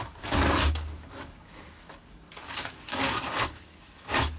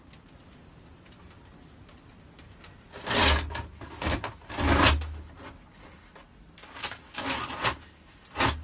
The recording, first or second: second